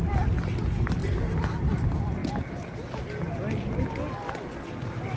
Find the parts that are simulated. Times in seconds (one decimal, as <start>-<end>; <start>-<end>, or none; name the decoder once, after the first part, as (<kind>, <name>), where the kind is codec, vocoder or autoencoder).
none